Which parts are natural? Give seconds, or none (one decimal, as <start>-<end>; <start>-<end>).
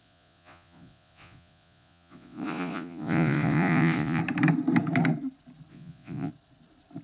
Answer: 4.2-5.7; 6.3-7.0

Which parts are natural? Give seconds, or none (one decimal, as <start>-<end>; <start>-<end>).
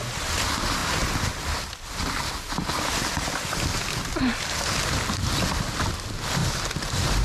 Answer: 0.0-6.4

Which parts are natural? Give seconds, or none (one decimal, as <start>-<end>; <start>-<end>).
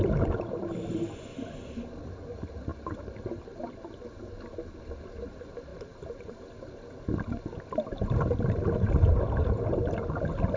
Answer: 0.0-10.6